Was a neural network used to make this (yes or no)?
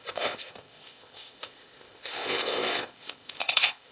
yes